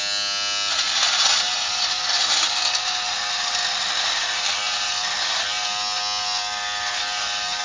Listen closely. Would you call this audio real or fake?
real